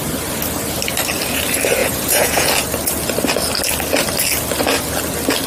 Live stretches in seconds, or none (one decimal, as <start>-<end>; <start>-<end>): 0.0-1.8; 2.5-5.5